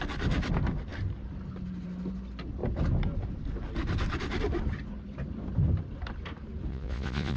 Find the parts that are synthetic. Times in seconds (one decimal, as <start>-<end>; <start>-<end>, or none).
6.7-7.4